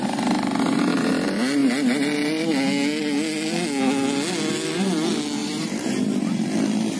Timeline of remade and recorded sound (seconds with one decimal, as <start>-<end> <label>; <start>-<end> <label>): 0.0-5.4 recorded; 5.4-6.1 remade; 6.1-7.0 recorded